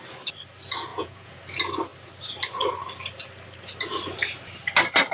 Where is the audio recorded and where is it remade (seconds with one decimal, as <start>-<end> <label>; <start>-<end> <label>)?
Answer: 0.0-0.9 recorded; 0.9-1.4 remade; 1.4-5.1 recorded

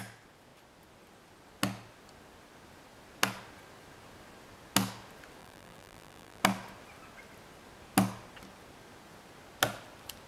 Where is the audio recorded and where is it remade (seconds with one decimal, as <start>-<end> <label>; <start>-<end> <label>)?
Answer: 0.0-5.4 recorded; 5.4-6.4 remade; 6.4-10.3 recorded